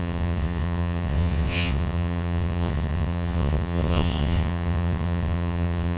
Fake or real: fake